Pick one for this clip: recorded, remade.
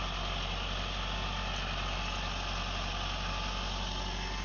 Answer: recorded